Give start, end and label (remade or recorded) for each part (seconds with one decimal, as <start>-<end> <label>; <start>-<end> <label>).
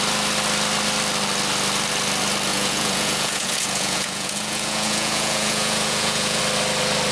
0.0-2.5 recorded; 2.5-6.4 remade; 6.4-7.1 recorded